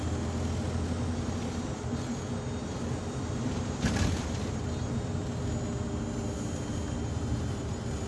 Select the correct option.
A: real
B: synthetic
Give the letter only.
A